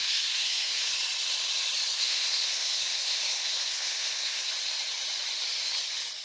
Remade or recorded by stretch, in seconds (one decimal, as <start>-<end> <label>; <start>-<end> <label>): 0.0-0.9 remade; 0.9-1.9 recorded; 1.9-4.5 remade; 4.5-6.2 recorded